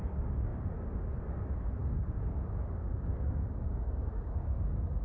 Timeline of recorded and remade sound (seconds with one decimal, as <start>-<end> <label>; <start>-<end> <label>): 0.0-1.8 recorded; 1.8-5.0 remade